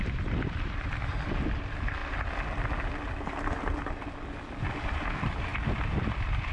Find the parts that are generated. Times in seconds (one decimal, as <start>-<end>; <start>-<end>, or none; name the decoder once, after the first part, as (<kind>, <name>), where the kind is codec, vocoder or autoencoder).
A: 0.0-2.0 (vocoder, BigVGAN v2); 4.6-5.5; 6.0-6.5